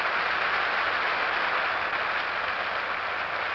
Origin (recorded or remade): recorded